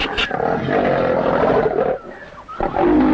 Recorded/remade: recorded